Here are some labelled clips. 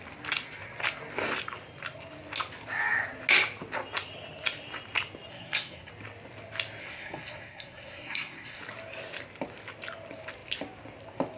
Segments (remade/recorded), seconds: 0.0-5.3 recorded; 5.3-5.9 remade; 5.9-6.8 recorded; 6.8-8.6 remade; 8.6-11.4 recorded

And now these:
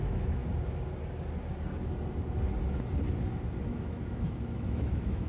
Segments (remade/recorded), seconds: 0.0-0.4 remade; 0.4-3.6 recorded; 3.6-5.3 remade